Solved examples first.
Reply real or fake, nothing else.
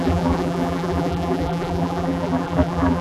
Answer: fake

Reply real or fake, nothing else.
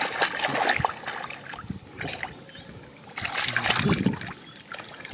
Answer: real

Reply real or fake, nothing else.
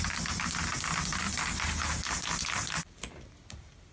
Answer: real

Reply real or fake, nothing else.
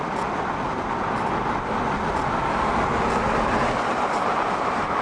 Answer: real